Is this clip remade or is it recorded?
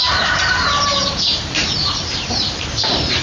remade